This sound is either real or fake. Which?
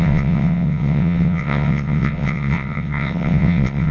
fake